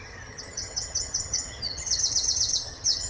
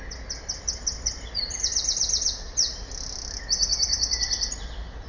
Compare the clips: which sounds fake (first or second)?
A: first